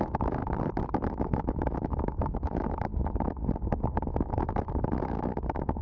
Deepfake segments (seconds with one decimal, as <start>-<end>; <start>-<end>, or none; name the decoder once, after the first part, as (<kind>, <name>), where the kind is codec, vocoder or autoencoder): 0.0-0.4 (autoencoder, DAC-VAE); 1.1-2.9; 3.8-5.8